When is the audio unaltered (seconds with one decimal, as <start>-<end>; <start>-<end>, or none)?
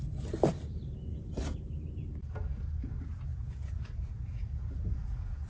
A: 0.0-3.3